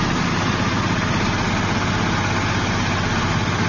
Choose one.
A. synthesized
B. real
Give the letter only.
B